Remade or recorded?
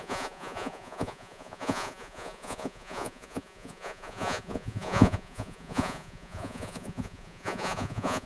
remade